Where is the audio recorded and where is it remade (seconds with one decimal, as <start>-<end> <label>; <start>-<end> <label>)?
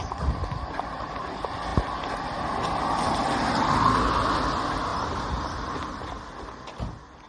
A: 0.0-7.3 recorded